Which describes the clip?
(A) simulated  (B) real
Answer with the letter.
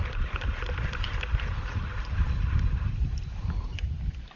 B